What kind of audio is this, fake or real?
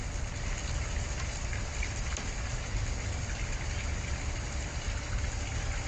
real